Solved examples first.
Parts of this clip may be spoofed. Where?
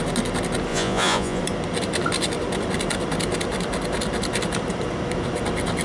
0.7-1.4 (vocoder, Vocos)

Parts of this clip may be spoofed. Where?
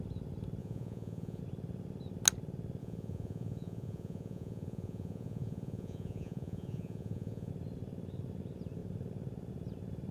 0.6-1.4 (vocoder, Vocos); 2.8-7.5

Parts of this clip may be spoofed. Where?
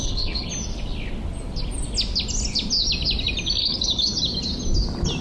0.0-0.5 (codec, HILCodec); 3.6-4.1